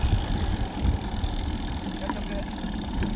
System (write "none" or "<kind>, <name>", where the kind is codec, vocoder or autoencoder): none